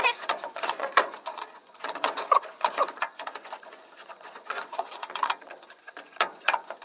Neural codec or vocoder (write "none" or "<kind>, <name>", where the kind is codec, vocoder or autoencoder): vocoder, Vocos